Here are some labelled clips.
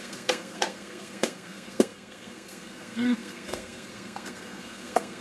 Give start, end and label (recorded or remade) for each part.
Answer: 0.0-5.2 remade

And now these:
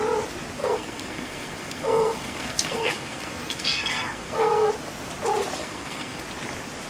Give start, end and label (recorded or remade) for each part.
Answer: 0.0-0.6 recorded; 0.6-4.7 remade; 4.7-5.6 recorded; 5.6-6.2 remade; 6.2-6.9 recorded

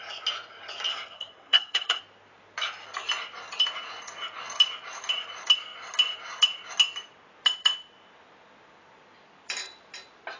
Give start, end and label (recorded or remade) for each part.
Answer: 0.0-0.9 recorded; 0.9-2.0 remade; 2.0-10.4 recorded

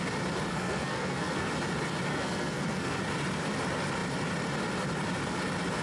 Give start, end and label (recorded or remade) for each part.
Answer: 0.0-0.5 recorded; 0.5-1.5 remade; 1.5-2.1 recorded; 2.1-3.0 remade; 3.0-5.8 recorded

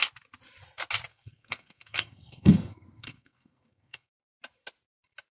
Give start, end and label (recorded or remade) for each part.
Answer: 0.0-1.1 recorded; 1.1-4.3 remade; 4.3-5.4 recorded

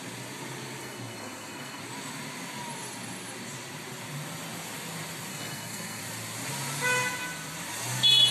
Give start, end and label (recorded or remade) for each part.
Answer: 0.0-0.8 recorded; 0.8-1.8 remade; 1.8-5.3 recorded; 5.3-6.0 remade; 6.0-8.3 recorded

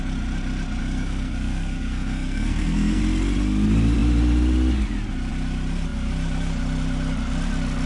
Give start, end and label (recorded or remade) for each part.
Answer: 0.0-0.8 recorded; 0.8-3.0 remade; 3.0-7.9 recorded